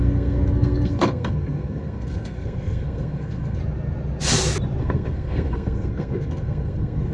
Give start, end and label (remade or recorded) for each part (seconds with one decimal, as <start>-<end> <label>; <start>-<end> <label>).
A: 0.0-3.6 remade; 3.6-4.8 recorded; 4.8-7.1 remade